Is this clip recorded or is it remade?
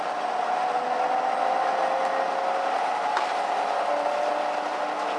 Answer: recorded